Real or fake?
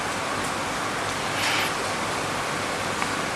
real